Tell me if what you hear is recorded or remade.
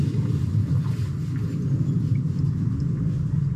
recorded